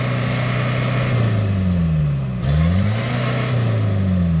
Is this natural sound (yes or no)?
yes